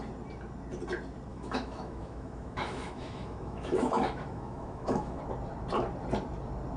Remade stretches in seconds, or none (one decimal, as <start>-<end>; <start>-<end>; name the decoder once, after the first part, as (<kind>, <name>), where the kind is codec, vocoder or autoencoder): 1.3-5.2 (autoencoder, DAC-VAE)